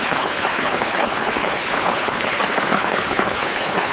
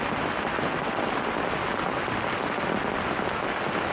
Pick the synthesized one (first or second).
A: first